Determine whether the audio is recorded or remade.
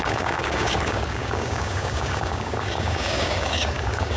remade